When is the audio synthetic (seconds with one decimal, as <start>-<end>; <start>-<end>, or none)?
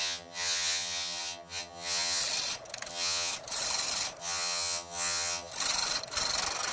0.0-2.2; 2.9-3.3; 4.2-5.5